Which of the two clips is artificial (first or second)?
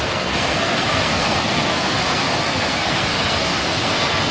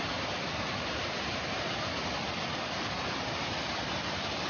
first